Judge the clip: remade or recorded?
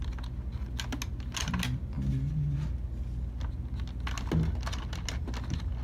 recorded